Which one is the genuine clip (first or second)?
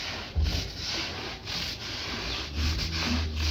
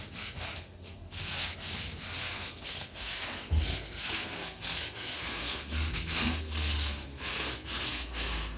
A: first